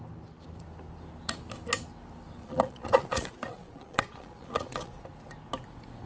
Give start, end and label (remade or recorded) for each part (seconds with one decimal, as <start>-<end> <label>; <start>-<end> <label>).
0.0-2.4 recorded; 2.4-5.0 remade; 5.0-6.1 recorded